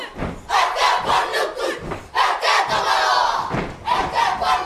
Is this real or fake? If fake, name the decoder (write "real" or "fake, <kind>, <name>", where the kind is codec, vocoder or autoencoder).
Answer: real